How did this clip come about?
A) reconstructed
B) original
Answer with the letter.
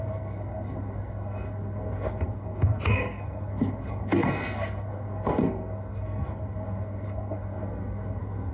A